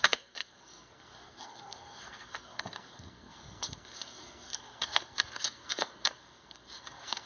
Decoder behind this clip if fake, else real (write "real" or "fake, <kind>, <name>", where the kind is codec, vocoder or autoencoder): fake, codec, SNAC